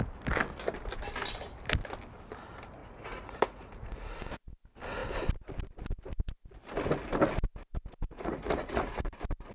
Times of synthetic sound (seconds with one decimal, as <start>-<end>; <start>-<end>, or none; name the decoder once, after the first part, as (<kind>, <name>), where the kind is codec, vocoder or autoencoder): 2.8-4.3 (vocoder, Vocos); 8.1-9.1